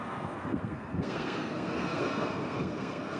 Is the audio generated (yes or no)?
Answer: yes